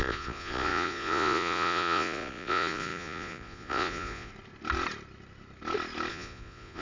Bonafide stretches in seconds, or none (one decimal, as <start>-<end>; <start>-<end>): 4.3-6.1